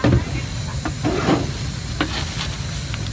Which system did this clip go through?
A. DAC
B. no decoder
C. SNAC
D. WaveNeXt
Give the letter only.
B